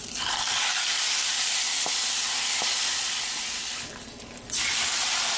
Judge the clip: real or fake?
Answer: real